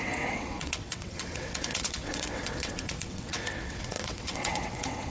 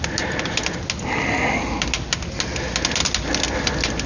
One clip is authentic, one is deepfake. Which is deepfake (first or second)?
first